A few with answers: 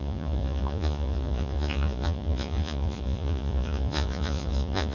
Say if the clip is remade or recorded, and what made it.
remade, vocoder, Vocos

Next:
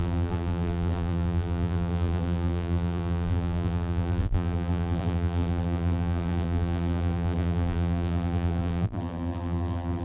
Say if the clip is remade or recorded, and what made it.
remade, vocoder, BigVGAN v2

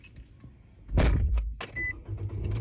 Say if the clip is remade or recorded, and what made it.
recorded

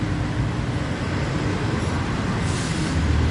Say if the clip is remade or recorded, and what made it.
recorded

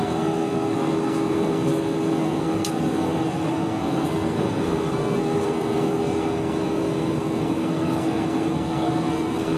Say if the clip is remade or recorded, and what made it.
remade, codec, SNAC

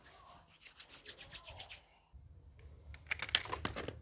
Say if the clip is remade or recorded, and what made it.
recorded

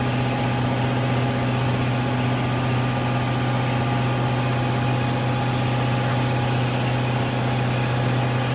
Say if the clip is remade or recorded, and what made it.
recorded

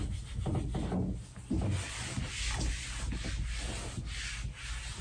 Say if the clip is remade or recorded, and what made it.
recorded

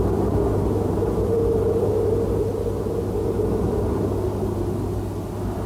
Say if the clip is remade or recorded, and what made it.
recorded